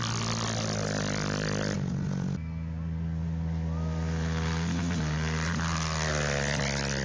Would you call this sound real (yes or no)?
yes